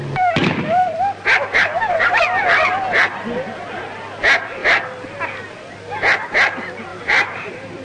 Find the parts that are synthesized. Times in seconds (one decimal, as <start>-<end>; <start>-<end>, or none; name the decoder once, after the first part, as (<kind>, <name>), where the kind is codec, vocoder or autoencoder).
1.5-2.2 (vocoder, BigVGAN v2); 6.9-7.8